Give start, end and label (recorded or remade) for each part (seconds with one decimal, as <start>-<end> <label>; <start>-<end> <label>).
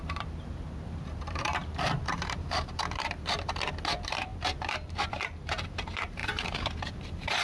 0.0-7.4 remade